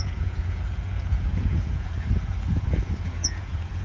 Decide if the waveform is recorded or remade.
remade